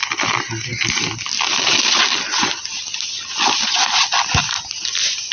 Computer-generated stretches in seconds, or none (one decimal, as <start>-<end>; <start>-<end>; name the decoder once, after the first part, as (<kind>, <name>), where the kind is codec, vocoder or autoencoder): none